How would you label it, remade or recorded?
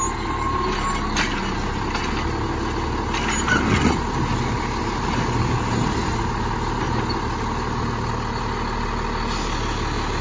recorded